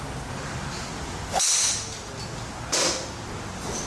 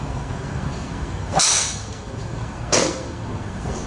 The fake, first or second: second